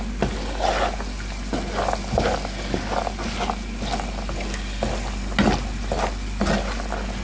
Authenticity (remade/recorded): recorded